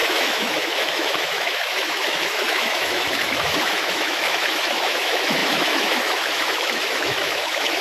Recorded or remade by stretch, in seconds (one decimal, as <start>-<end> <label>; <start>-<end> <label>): 0.0-7.8 remade